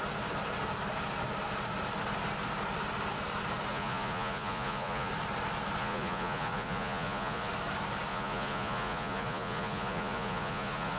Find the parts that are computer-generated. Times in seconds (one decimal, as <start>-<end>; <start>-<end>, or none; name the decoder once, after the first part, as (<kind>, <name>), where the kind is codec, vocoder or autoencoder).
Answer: 3.7-5.1 (vocoder, Vocos); 5.8-7.5; 8.1-11.0